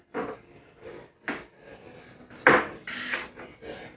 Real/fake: real